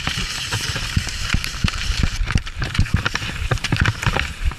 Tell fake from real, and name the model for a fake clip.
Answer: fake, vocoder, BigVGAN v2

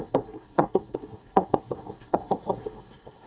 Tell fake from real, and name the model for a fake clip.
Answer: fake, codec, SNAC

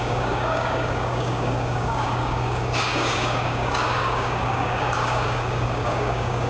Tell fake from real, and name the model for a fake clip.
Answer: fake, codec, DAC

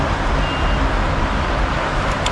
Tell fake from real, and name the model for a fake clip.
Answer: real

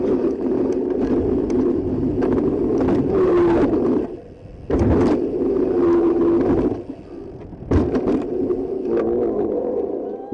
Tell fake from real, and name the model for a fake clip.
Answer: real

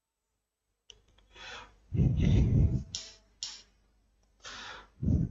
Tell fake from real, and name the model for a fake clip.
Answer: real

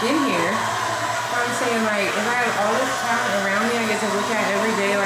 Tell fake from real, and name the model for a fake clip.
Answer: real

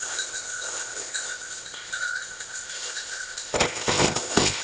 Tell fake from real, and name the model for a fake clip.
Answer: fake, codec, ZipCodec